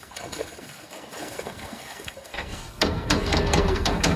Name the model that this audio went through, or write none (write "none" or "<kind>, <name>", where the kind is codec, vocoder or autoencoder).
codec, SNAC